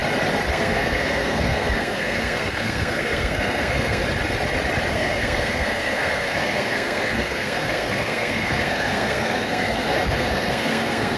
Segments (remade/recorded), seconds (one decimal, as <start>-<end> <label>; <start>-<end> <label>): 0.0-0.5 recorded; 0.5-4.0 remade; 4.0-4.9 recorded; 4.9-11.2 remade